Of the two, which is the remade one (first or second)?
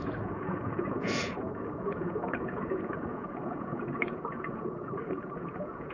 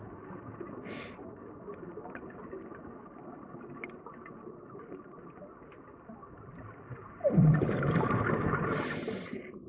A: first